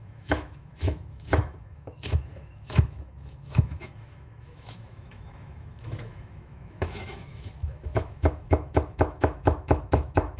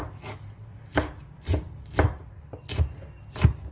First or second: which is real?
second